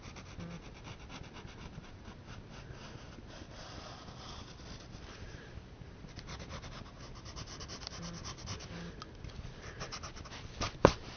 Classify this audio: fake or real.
real